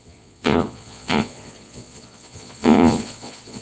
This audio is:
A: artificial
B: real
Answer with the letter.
A